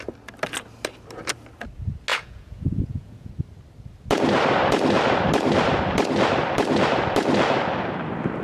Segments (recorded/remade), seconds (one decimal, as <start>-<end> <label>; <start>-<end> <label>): 0.0-2.1 recorded; 2.1-3.3 remade; 3.3-8.4 recorded